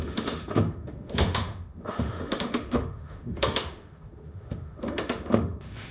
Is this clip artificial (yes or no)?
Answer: yes